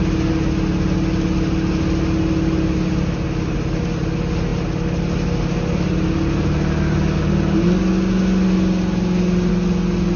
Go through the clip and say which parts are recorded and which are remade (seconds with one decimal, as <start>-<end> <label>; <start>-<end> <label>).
0.0-10.2 recorded